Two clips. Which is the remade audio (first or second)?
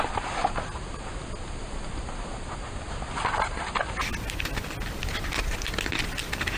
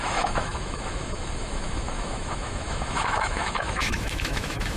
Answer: second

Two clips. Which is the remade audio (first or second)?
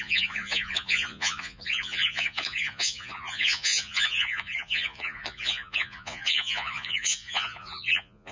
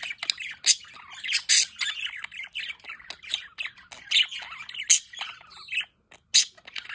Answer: first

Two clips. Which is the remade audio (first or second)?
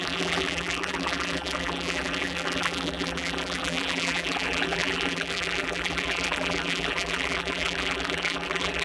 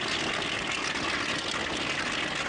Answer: first